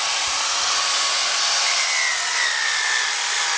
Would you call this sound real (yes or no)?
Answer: yes